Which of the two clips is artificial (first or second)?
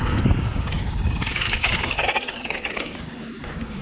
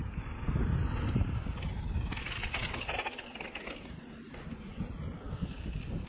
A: first